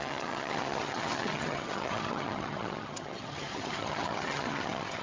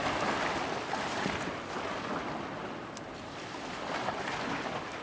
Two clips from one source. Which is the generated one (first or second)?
first